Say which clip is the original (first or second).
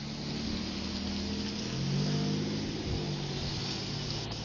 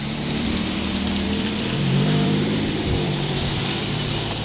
first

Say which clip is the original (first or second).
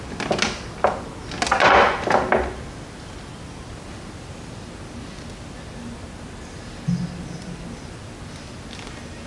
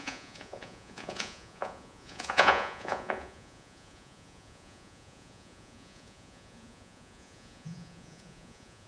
first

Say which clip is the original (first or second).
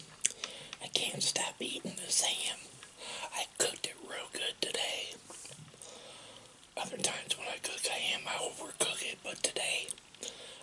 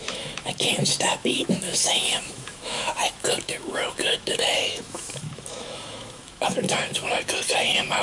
first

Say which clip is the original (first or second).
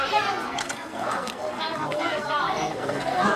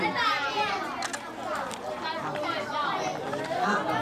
second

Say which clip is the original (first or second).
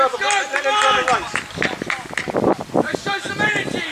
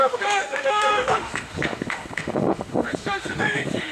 first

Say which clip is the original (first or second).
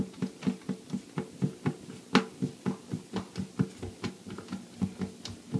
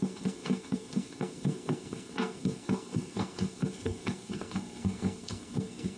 first